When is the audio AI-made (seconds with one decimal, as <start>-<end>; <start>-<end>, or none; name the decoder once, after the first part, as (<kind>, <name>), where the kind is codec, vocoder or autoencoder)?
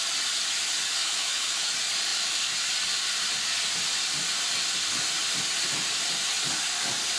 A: 1.0-1.7 (autoencoder, DAC-VAE)